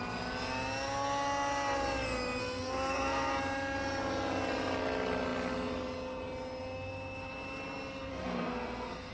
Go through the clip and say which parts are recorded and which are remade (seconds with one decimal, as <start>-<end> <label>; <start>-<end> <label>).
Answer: 0.0-2.4 recorded; 2.4-3.3 remade; 3.3-8.1 recorded; 8.1-9.1 remade